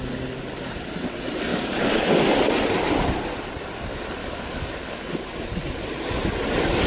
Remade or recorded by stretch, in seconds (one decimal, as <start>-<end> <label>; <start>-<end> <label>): 0.0-1.5 recorded; 1.5-2.0 remade; 2.0-4.2 recorded; 4.2-5.2 remade; 5.2-6.9 recorded